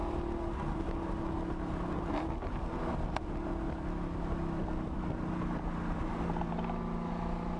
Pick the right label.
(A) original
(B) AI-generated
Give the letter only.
A